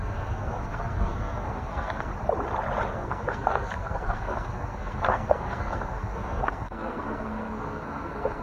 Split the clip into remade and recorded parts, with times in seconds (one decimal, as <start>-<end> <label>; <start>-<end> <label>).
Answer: 0.0-2.1 remade; 2.1-2.9 recorded; 2.9-8.4 remade

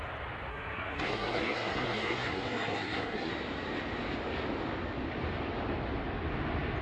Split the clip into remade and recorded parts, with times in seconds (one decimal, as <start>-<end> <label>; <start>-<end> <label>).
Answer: 0.0-0.5 recorded; 0.5-3.3 remade; 3.3-6.8 recorded

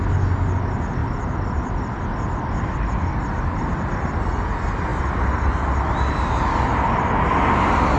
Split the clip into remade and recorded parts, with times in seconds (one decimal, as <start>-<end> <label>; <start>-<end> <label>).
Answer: 0.0-8.0 recorded

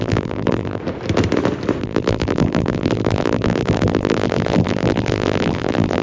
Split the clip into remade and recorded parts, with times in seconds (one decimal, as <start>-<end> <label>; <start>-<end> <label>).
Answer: 0.0-0.8 remade; 0.8-1.8 recorded; 1.8-6.0 remade

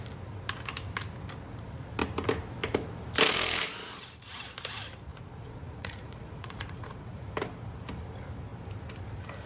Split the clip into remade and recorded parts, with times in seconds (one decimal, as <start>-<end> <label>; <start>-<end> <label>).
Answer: 0.0-5.1 recorded; 5.1-7.3 remade; 7.3-9.5 recorded

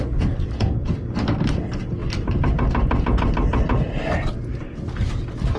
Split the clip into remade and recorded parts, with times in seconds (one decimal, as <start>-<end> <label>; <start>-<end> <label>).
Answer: 0.0-2.0 recorded; 2.0-4.6 remade; 4.6-5.6 recorded

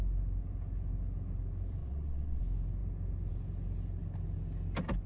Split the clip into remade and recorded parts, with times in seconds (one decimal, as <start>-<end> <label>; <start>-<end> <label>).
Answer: 0.0-1.8 recorded; 1.8-2.4 remade; 2.4-5.1 recorded

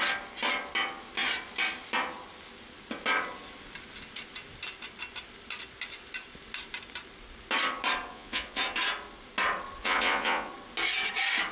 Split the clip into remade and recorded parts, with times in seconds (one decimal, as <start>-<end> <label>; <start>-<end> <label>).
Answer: 0.0-8.1 recorded; 8.1-8.6 remade; 8.6-9.8 recorded; 9.8-10.5 remade; 10.5-11.5 recorded